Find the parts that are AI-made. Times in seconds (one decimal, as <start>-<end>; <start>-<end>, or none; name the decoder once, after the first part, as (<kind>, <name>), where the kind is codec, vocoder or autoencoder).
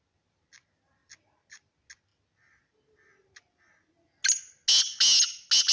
none